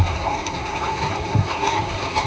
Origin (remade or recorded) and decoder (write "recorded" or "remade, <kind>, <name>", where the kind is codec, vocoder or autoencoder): remade, codec, SNAC